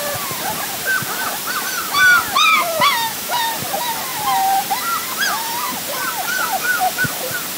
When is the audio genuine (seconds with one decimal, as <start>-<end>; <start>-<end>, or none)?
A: 0.0-2.5; 3.4-7.6